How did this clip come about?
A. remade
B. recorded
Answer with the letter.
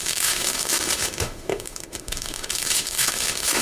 A